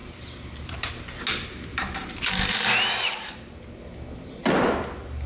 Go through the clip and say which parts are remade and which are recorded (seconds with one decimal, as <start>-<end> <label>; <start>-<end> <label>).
0.0-0.9 remade; 0.9-1.7 recorded; 1.7-3.6 remade; 3.6-4.4 recorded; 4.4-5.3 remade